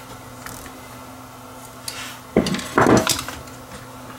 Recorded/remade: recorded